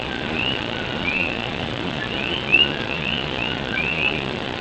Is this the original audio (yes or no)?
no